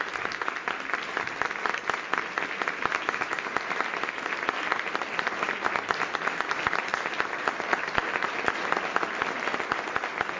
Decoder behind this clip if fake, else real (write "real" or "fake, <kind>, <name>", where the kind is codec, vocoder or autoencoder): real